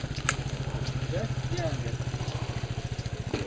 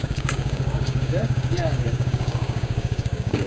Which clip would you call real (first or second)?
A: first